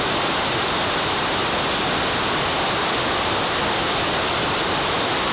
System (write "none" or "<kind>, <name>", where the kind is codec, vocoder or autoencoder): none